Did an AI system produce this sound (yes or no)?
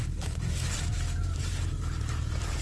yes